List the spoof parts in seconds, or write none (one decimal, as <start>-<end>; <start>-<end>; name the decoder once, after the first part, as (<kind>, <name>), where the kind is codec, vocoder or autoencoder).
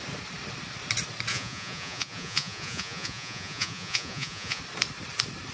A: 1.3-4.6 (vocoder, Vocos)